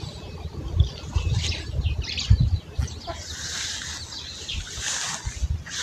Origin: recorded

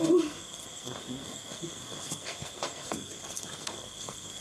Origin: remade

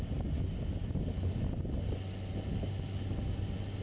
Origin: recorded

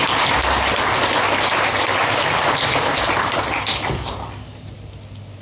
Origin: recorded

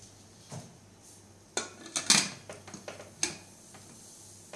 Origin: recorded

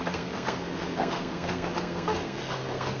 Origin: remade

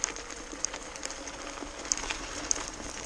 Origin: recorded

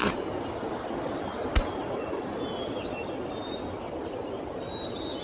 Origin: recorded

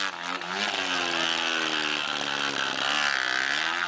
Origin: recorded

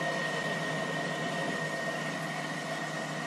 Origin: recorded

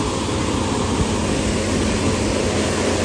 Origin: recorded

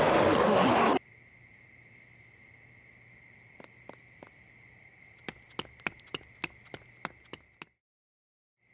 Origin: recorded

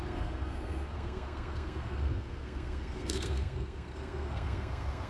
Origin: remade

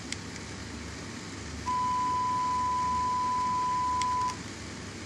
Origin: recorded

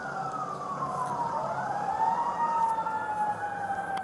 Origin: recorded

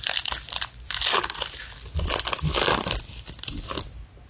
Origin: recorded